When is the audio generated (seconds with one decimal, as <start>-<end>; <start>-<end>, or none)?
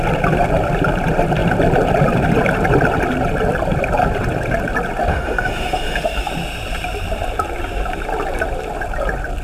5.1-6.3